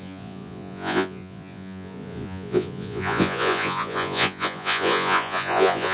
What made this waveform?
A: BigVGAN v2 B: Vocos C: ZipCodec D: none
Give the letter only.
B